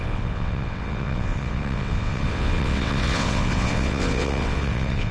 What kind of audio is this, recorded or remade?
remade